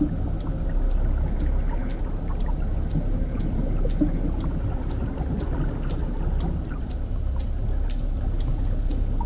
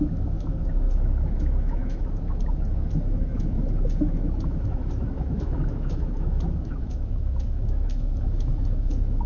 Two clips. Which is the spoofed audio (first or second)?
second